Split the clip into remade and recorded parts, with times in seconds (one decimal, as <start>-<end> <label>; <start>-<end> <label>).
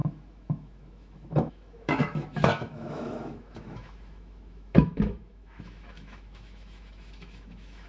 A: 0.0-7.9 remade